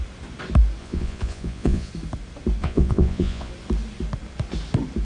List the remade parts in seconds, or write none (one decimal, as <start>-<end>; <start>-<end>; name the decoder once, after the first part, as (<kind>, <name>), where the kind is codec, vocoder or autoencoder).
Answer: 0.8-1.9 (vocoder, Vocos); 2.6-3.5